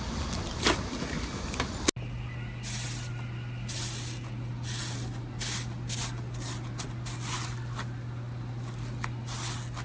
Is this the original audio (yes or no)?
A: yes